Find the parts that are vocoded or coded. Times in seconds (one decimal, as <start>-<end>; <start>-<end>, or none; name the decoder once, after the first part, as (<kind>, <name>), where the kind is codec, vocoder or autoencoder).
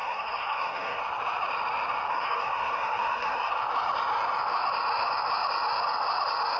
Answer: 0.0-1.0 (codec, SNAC); 2.1-3.5